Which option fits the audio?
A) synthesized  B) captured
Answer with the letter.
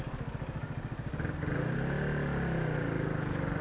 B